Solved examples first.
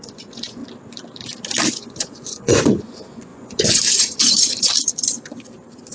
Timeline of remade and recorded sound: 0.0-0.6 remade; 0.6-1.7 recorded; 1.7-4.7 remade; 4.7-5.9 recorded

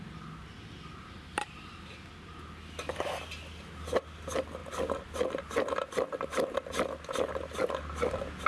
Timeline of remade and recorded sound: 0.0-8.5 recorded

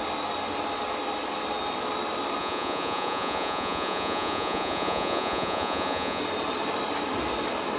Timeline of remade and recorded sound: 0.0-2.4 recorded; 2.4-6.2 remade; 6.2-7.8 recorded

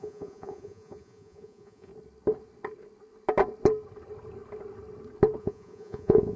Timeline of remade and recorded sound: 0.0-1.9 remade; 1.9-5.4 recorded; 5.4-6.4 remade

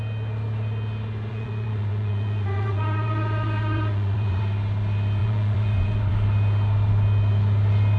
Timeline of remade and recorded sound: 0.0-1.3 recorded; 1.3-4.4 remade; 4.4-5.2 recorded; 5.2-6.1 remade; 6.1-8.0 recorded

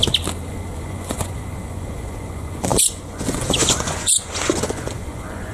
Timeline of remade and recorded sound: 0.0-0.5 recorded; 0.5-5.5 remade